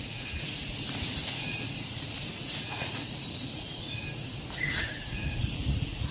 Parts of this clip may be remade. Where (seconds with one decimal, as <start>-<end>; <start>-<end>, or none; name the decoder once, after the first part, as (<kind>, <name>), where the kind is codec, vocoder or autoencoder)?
0.0-4.0 (vocoder, Vocos); 4.5-6.1